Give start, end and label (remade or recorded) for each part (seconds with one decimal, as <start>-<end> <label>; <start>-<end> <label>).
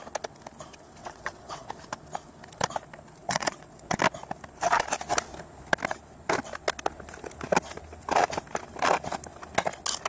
0.0-1.0 recorded; 1.0-1.7 remade; 1.7-3.2 recorded; 3.2-4.0 remade; 4.0-10.1 recorded